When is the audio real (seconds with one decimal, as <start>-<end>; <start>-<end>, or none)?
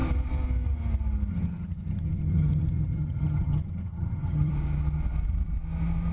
0.0-1.3; 4.5-6.1